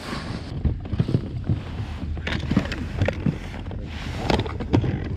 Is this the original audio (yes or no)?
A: yes